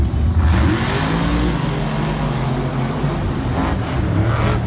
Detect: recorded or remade recorded